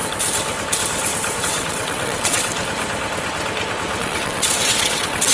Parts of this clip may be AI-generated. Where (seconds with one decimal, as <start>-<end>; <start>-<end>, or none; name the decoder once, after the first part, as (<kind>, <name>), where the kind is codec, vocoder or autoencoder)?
1.4-2.5 (vocoder, WaveNeXt); 4.0-5.3